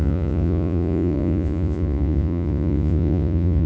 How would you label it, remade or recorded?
remade